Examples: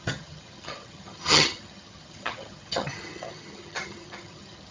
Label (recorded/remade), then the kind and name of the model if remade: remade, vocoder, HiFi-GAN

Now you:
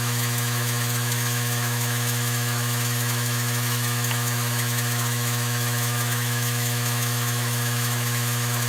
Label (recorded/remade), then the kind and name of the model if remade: remade, autoencoder, DAC-VAE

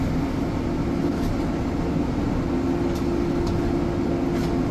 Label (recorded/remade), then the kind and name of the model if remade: recorded